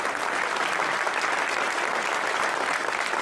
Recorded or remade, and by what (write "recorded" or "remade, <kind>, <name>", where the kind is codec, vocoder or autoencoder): recorded